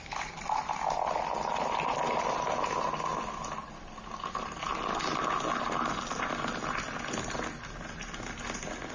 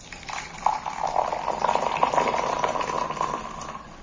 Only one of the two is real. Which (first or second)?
first